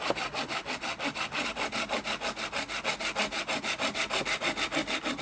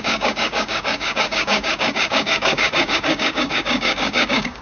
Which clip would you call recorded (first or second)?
first